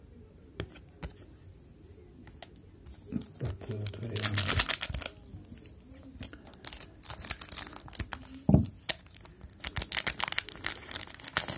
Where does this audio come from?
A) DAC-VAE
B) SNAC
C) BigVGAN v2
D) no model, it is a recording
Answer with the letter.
D